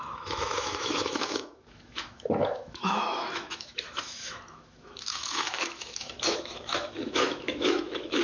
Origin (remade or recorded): remade